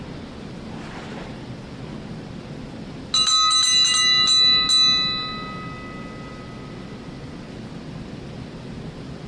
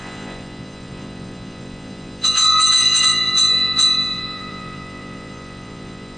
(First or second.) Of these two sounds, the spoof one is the second